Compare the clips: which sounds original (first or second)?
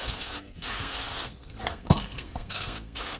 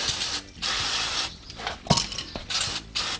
second